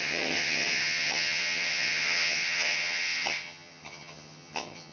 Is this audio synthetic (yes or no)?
yes